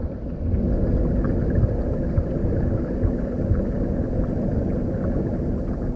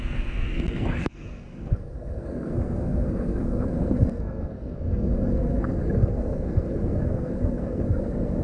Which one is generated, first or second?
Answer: second